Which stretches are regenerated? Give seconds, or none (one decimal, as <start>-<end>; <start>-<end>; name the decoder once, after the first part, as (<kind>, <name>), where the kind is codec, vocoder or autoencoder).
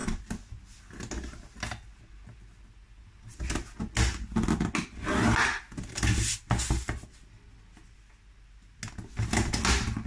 none